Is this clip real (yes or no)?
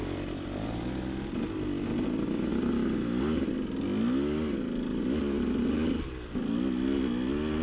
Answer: yes